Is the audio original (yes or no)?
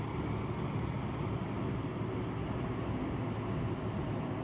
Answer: yes